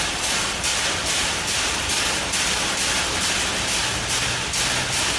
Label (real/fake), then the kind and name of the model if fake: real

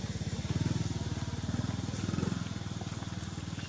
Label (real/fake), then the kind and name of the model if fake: real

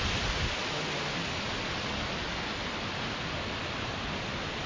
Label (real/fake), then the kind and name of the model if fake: real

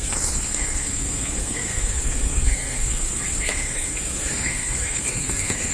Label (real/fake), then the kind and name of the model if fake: fake, codec, SNAC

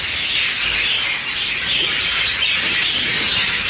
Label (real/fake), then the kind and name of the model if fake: real